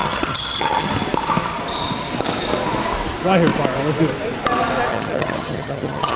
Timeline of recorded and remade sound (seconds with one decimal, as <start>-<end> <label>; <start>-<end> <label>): 0.0-0.9 remade; 0.9-4.9 recorded; 4.9-6.2 remade